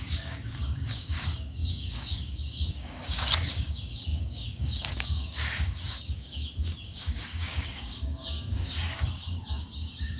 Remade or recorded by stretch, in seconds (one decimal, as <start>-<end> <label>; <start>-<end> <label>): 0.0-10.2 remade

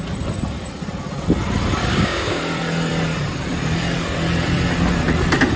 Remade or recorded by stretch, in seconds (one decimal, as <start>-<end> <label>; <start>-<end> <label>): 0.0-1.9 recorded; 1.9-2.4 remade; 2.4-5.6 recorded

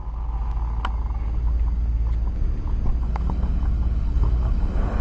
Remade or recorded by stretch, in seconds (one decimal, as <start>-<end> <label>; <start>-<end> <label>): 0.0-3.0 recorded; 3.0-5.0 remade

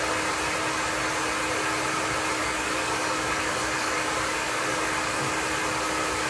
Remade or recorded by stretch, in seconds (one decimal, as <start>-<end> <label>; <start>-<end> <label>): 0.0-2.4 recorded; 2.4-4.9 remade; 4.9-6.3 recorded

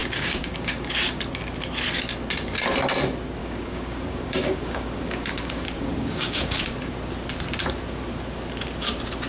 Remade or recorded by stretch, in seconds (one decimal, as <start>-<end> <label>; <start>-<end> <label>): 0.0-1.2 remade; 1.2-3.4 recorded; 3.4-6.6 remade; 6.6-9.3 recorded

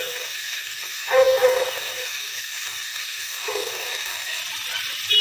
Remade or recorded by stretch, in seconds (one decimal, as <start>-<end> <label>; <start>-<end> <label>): 0.0-4.4 remade; 4.4-5.2 recorded

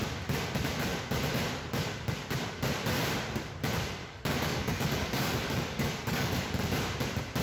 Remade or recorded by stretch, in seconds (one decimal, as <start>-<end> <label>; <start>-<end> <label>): 0.0-4.0 recorded; 4.0-6.5 remade; 6.5-7.4 recorded